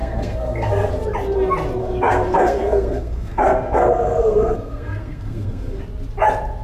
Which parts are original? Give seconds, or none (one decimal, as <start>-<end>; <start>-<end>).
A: 0.9-1.8; 5.8-6.6